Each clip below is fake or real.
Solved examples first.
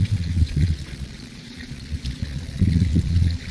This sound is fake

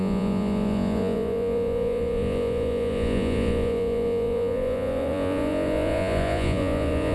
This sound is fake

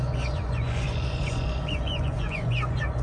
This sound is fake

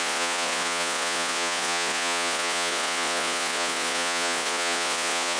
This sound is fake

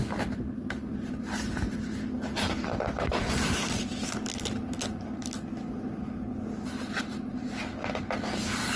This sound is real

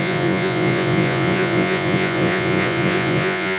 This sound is fake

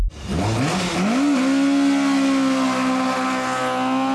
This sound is real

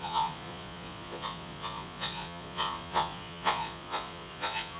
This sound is fake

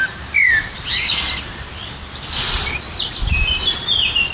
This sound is real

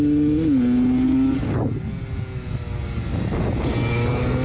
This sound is real